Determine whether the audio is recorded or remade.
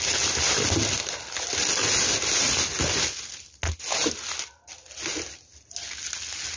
recorded